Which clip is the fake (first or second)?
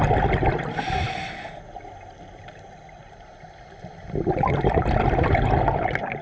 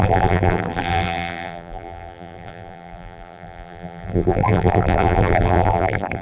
second